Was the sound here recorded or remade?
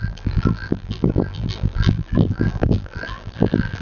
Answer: remade